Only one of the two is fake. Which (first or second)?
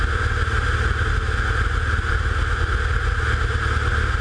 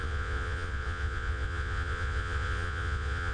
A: second